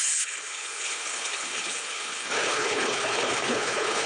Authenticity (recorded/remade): remade